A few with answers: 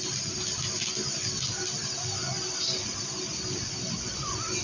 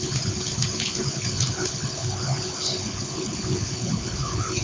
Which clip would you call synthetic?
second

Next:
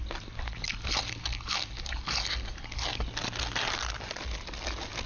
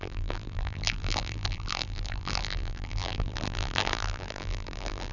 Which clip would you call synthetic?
second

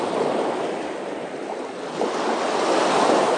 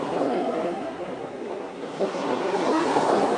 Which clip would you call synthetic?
second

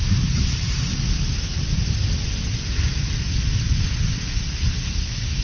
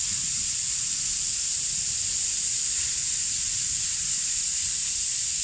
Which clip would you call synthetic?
second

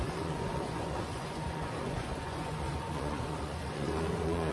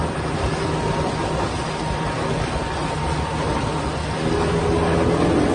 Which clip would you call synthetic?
first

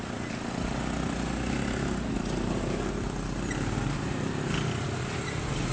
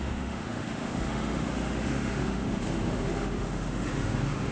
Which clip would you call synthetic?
second